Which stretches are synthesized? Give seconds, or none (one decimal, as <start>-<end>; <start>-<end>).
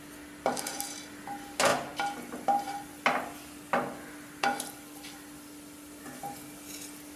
none